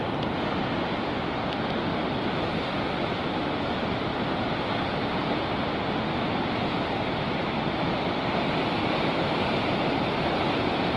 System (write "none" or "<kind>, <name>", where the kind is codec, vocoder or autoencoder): none